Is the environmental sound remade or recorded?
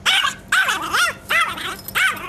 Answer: recorded